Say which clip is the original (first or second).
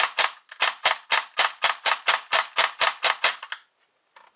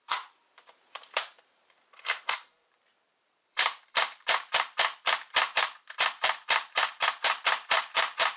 first